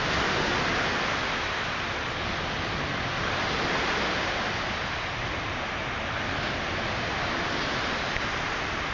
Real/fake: real